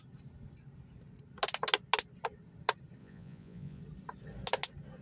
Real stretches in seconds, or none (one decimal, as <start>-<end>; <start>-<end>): 0.0-3.0; 3.8-5.0